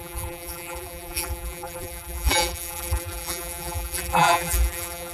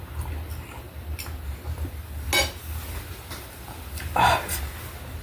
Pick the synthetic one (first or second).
first